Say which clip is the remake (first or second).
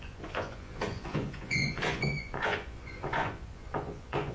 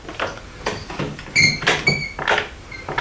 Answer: first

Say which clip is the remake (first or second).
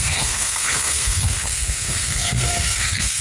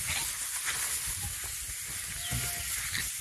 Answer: first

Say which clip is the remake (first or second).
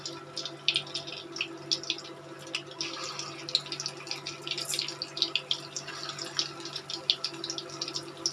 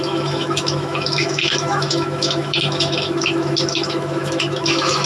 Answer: second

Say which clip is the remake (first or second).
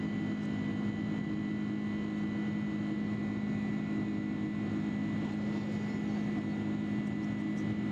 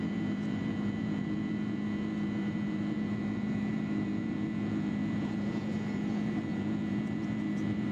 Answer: second